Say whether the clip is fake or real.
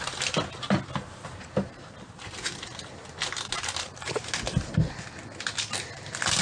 real